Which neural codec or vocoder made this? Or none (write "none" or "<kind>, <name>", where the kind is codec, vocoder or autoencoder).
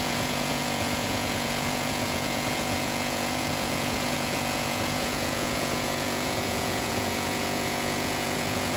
vocoder, Vocos